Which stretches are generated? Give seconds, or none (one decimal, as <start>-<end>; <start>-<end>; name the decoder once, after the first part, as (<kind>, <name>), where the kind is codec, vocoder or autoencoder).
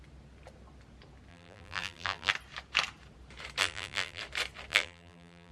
1.3-2.3 (vocoder, BigVGAN v2); 3.6-4.2; 4.7-5.5